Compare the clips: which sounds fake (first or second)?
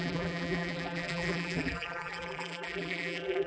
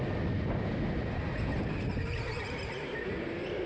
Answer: first